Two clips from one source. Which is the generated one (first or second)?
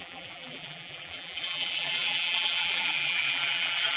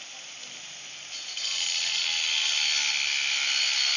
first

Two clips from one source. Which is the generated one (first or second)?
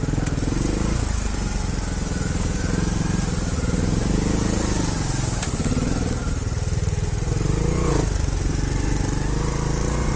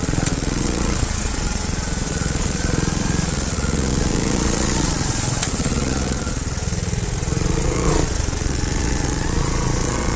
second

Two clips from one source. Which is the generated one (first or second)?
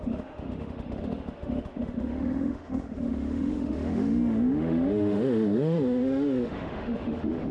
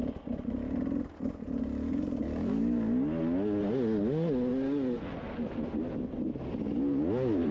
first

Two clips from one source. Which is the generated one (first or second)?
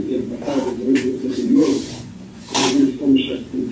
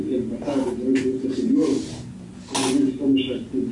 first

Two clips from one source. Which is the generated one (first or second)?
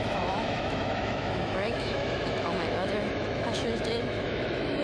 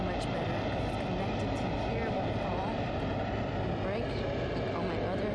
first